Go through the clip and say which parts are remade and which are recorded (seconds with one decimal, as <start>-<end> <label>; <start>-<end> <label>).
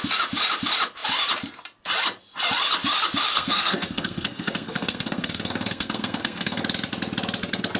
0.0-3.3 recorded; 3.3-6.6 remade; 6.6-7.8 recorded